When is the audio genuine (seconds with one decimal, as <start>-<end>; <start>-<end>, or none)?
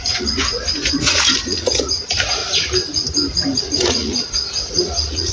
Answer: 2.4-3.6